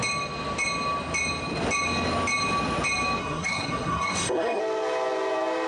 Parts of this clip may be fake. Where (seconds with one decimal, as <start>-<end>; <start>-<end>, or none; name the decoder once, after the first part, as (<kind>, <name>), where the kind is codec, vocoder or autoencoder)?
3.2-4.6 (codec, SNAC)